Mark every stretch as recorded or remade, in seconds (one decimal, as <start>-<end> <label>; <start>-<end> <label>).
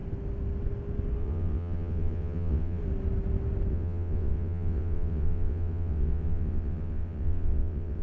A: 0.0-1.2 recorded; 1.2-2.8 remade; 2.8-3.7 recorded; 3.7-8.0 remade